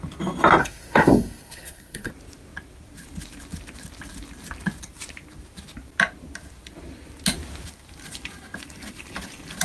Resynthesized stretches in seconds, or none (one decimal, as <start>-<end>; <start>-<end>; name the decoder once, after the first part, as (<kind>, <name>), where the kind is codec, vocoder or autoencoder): 0.6-2.1 (codec, SNAC)